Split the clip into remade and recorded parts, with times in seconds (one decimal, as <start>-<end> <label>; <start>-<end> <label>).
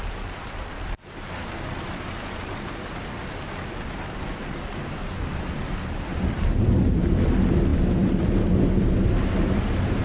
0.0-10.0 remade